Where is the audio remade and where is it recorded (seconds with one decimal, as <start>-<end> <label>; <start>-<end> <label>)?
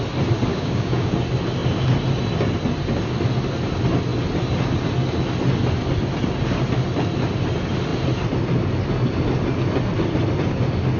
0.0-0.5 recorded; 0.5-1.1 remade; 1.1-11.0 recorded